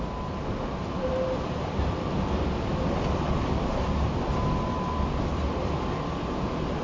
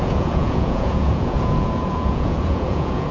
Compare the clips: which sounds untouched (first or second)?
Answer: first